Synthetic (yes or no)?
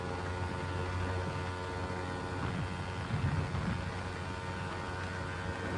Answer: no